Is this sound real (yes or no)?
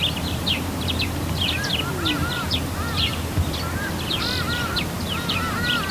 no